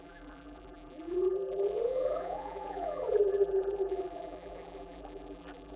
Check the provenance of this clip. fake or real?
fake